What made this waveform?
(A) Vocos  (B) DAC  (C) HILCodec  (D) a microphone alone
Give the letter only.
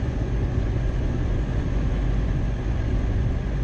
A